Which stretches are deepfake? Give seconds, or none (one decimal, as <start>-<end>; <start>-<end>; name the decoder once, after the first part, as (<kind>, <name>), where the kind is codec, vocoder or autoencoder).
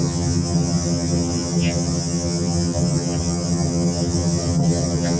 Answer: 0.0-5.2 (vocoder, HiFi-GAN)